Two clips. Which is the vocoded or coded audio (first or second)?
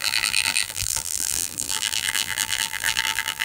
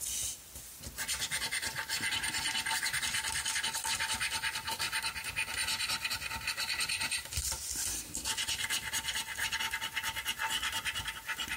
first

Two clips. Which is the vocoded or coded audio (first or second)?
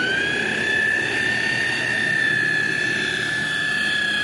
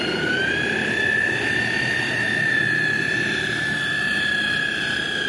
second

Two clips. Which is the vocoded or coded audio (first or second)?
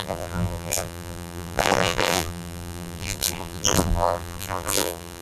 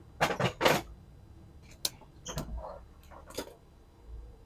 first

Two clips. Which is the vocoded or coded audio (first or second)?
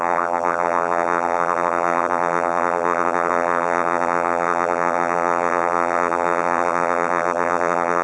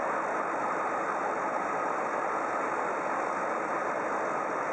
first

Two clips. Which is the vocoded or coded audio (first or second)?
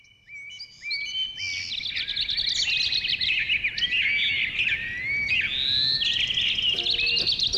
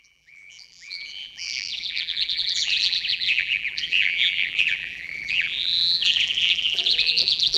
second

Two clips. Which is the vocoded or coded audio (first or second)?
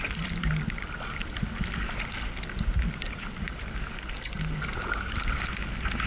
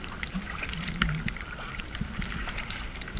second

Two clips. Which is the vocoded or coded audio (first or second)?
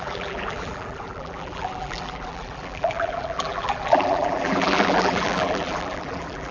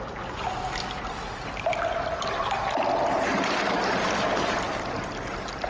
first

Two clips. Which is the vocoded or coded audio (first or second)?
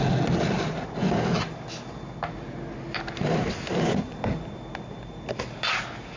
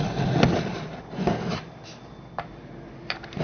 second